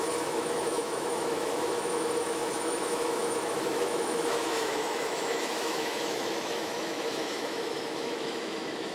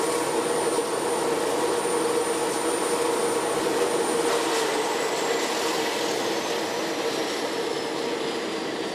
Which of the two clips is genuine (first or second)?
second